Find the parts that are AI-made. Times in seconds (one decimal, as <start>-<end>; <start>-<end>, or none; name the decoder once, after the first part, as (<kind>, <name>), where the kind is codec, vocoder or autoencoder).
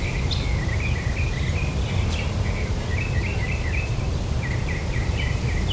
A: 3.3-5.7 (vocoder, BigVGAN v2)